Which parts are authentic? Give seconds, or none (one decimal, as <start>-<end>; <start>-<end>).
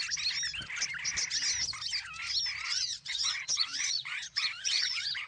0.0-2.7